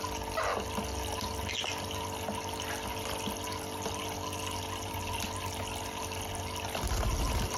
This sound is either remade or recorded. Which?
recorded